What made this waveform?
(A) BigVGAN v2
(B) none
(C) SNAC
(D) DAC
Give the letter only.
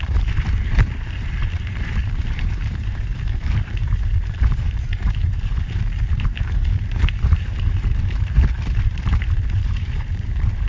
A